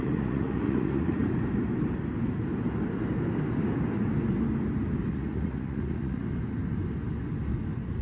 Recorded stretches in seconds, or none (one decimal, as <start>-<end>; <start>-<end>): 1.2-5.1; 6.2-8.0